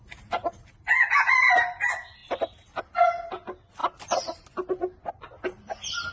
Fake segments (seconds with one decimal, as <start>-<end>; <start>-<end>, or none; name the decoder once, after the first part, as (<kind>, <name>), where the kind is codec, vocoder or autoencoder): none

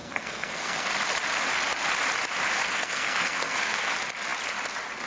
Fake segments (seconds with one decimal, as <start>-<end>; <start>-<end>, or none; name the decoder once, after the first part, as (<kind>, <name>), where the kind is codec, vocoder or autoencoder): 0.0-0.9 (codec, SNAC); 2.6-3.9

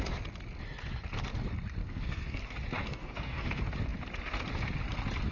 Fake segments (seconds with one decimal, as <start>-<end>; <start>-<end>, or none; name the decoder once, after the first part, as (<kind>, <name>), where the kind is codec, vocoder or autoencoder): 1.8-2.4 (codec, SNAC); 2.8-3.5

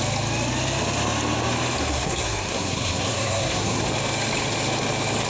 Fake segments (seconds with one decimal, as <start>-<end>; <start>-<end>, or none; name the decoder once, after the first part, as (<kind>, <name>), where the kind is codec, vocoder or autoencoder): 1.8-3.8 (codec, SNAC)